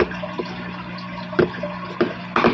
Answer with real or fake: real